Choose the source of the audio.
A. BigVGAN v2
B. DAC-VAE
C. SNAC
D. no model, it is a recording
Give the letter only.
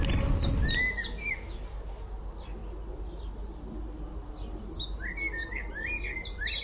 D